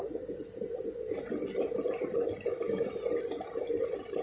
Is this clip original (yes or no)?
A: yes